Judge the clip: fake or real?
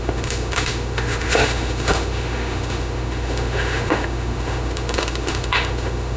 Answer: fake